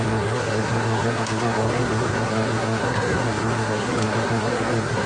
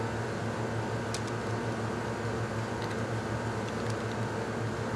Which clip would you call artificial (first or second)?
first